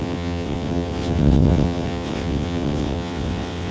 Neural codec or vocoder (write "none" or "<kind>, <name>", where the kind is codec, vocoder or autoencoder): vocoder, WaveNeXt